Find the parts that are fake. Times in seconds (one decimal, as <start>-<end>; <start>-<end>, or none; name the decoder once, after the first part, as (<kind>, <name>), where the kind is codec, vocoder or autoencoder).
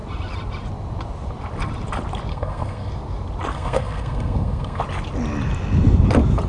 2.3-2.9 (codec, SNAC); 3.5-4.8